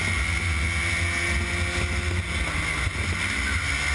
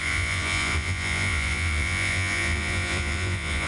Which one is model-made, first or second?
second